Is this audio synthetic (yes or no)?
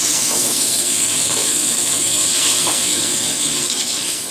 yes